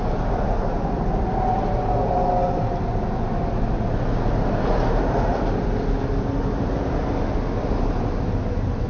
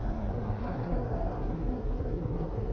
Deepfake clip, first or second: second